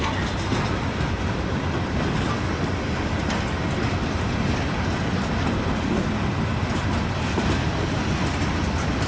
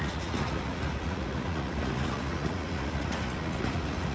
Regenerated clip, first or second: second